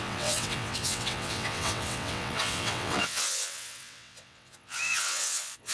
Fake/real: fake